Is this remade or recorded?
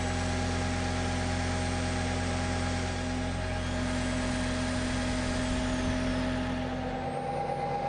recorded